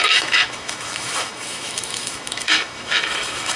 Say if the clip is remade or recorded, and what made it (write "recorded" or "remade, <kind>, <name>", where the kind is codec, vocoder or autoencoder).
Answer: remade, autoencoder, DAC-VAE